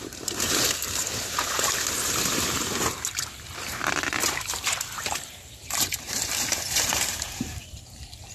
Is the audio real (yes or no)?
no